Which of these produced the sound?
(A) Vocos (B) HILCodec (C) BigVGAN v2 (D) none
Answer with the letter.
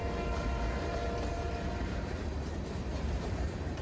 C